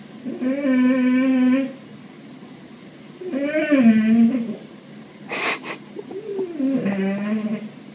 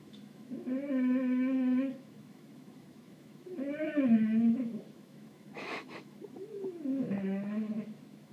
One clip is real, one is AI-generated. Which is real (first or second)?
first